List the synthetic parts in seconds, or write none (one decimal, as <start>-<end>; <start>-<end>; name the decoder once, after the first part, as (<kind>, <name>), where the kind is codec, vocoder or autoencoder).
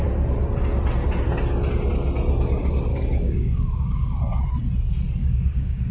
2.9-4.4 (codec, DAC); 5.2-5.9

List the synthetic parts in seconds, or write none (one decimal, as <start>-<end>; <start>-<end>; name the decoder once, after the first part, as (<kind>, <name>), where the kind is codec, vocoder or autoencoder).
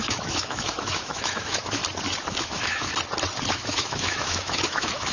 0.0-1.8 (autoencoder, DAC-VAE); 2.3-2.9; 3.5-5.1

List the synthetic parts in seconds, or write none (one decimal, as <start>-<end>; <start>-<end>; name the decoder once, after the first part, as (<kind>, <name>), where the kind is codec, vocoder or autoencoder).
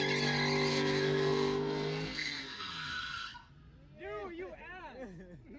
0.7-3.5 (codec, SNAC)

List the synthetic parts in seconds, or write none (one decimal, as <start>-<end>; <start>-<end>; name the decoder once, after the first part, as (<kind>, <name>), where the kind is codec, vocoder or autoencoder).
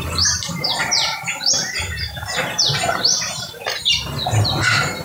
0.0-5.0 (vocoder, BigVGAN v2)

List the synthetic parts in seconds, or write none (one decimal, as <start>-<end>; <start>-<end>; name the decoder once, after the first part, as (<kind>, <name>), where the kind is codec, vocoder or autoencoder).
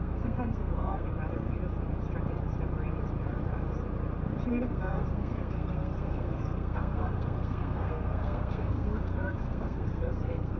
0.0-1.1 (codec, SNAC); 4.5-10.6